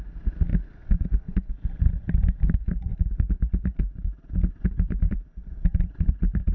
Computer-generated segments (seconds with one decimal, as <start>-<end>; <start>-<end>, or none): 0.0-0.5; 1.7-2.9; 4.5-6.5